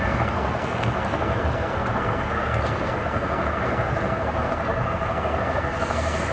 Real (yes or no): no